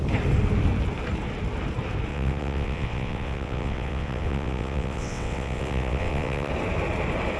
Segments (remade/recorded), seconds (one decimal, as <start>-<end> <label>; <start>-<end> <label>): 0.0-2.1 recorded; 2.1-6.5 remade; 6.5-7.4 recorded